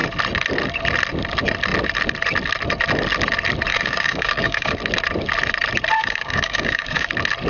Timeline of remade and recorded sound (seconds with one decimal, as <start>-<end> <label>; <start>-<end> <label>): 0.0-3.7 recorded; 3.7-4.8 remade; 4.8-6.0 recorded; 6.0-7.1 remade; 7.1-7.5 recorded